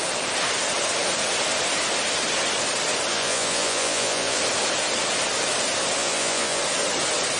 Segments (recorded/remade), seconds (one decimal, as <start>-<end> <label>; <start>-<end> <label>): 0.0-3.1 recorded; 3.1-4.4 remade; 4.4-6.0 recorded; 6.0-6.6 remade; 6.6-7.4 recorded

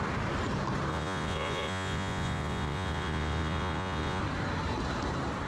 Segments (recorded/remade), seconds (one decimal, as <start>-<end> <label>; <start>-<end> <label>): 0.0-0.9 recorded; 0.9-4.2 remade; 4.2-5.5 recorded

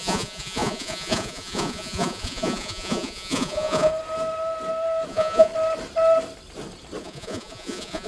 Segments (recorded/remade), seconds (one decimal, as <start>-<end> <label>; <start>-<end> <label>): 0.0-3.9 remade; 3.9-5.1 recorded; 5.1-5.5 remade; 5.5-7.0 recorded; 7.0-8.1 remade

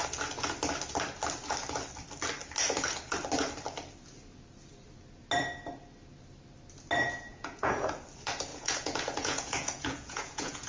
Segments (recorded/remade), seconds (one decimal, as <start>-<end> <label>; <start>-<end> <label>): 0.0-7.3 recorded; 7.3-7.9 remade; 7.9-8.5 recorded; 8.5-10.7 remade